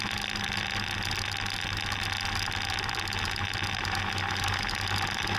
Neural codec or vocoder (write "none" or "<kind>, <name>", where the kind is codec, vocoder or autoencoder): none